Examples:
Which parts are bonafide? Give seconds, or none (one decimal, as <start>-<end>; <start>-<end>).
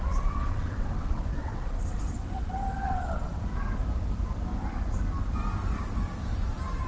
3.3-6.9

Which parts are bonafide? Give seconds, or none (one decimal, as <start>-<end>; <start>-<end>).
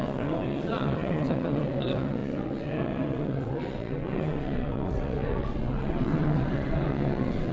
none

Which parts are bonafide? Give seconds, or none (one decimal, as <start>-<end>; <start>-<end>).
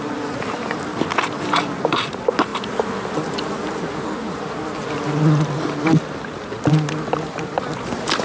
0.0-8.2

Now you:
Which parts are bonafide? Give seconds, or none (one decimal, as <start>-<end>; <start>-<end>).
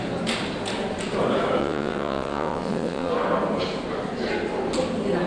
0.0-1.6; 3.1-5.3